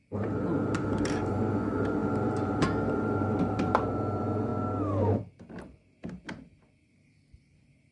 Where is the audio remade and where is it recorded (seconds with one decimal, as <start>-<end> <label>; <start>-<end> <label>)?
0.0-4.5 remade; 4.5-6.8 recorded; 6.8-7.9 remade